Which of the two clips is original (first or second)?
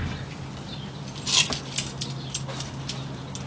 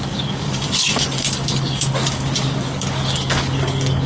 first